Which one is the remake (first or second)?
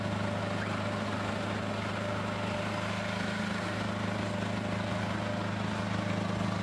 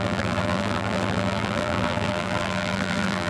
second